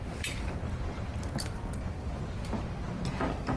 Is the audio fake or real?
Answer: real